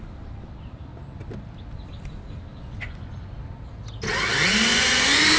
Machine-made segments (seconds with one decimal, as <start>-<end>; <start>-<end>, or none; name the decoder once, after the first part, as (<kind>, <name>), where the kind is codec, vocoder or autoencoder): 2.5-3.2 (vocoder, Vocos); 4.7-5.4